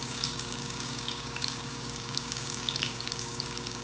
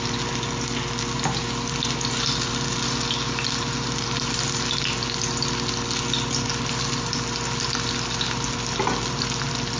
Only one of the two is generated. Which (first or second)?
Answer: first